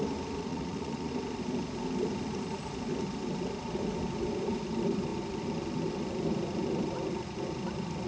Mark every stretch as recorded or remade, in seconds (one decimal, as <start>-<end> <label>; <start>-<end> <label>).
0.0-0.5 recorded; 0.5-1.1 remade; 1.1-8.1 recorded